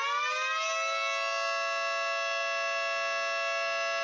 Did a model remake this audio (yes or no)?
no